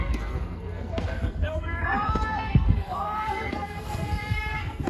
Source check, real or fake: fake